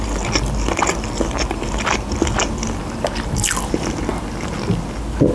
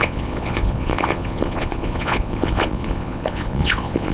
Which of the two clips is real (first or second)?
first